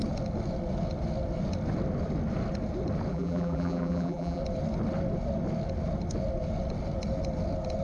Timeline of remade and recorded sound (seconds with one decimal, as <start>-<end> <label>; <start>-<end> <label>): 0.0-3.1 recorded; 3.1-4.4 remade; 4.4-7.8 recorded